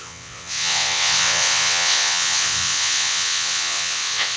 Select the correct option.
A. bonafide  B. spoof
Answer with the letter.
B